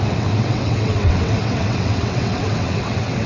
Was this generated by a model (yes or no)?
yes